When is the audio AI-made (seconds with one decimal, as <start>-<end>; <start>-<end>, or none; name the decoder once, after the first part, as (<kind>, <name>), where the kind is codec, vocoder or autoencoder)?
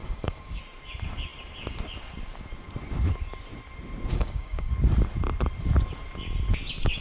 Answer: 0.0-0.6 (codec, DAC); 4.1-4.7